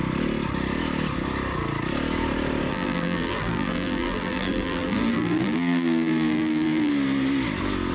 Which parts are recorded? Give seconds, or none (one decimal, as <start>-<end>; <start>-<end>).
0.0-2.7; 6.9-7.9